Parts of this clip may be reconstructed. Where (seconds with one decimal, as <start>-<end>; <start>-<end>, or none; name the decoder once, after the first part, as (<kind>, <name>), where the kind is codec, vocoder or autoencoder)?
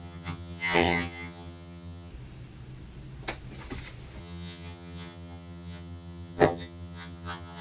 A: 0.0-2.1 (vocoder, HiFi-GAN); 4.2-7.6